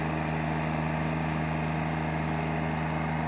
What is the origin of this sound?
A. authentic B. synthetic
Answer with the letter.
A